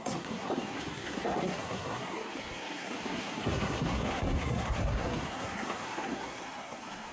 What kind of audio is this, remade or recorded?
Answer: remade